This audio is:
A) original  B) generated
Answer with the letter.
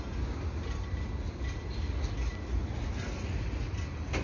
A